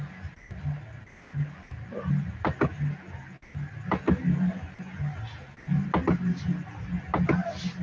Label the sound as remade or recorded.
recorded